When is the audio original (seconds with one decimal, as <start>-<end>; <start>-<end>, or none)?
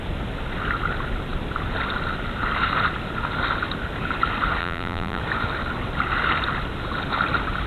0.0-4.6; 5.2-7.7